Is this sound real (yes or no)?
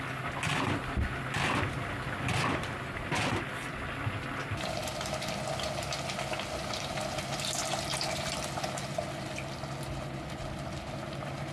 yes